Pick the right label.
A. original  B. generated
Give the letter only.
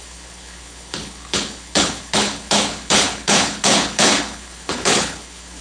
B